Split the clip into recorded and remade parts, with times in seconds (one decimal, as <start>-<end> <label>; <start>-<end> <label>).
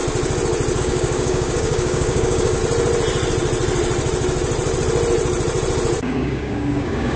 0.0-0.8 recorded; 0.8-2.6 remade; 2.6-6.0 recorded; 6.0-7.2 remade